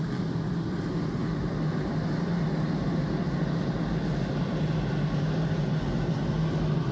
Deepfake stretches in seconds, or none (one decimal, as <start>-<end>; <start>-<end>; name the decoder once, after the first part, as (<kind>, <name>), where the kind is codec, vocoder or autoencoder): none

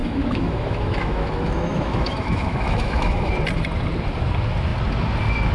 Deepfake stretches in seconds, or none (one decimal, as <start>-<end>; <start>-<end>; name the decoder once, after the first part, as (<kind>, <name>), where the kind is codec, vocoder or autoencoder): 0.0-3.3 (autoencoder, DAC-VAE)

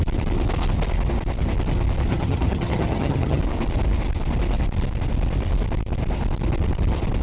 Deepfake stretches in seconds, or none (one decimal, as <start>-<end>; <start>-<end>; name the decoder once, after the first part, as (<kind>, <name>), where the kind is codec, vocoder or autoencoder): 2.1-3.4 (vocoder, HiFi-GAN)

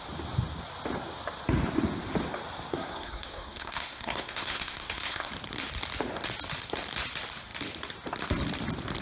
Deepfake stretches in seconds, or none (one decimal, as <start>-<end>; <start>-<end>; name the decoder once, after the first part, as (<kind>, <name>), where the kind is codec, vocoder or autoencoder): 2.7-5.3 (codec, SNAC)

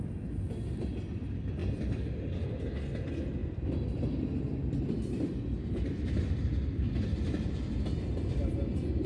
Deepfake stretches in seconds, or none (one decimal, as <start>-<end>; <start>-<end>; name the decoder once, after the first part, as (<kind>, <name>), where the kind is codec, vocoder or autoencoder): 1.6-2.7 (vocoder, BigVGAN v2); 3.4-7.5